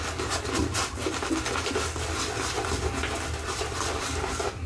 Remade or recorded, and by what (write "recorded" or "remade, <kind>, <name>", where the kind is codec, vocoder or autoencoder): recorded